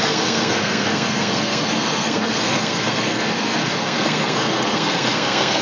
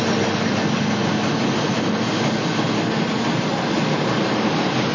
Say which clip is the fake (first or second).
first